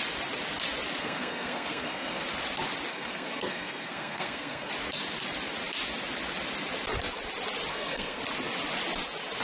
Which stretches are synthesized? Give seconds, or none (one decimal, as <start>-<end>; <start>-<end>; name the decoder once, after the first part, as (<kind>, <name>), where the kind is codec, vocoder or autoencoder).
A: 1.0-2.2 (codec, SNAC); 2.9-4.7; 7.7-8.2